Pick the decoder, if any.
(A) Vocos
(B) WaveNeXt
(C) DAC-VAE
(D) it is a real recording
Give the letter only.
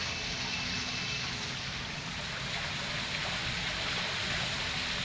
D